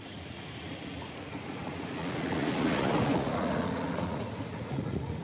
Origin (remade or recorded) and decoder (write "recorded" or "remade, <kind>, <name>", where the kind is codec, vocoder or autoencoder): remade, vocoder, Vocos